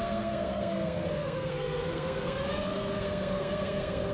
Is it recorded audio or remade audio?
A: remade